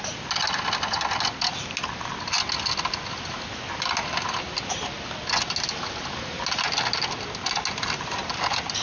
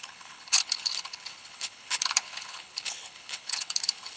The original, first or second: first